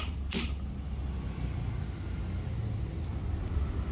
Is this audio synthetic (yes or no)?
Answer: no